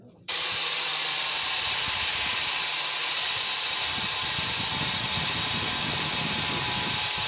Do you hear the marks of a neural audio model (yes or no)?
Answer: yes